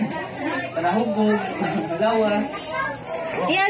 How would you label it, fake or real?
real